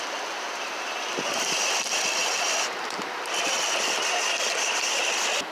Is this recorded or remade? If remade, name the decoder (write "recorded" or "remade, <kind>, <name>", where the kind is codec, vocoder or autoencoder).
recorded